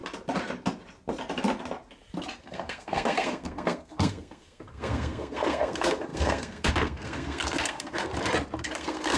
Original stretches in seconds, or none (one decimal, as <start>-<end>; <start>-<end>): 0.0-2.4; 8.1-8.6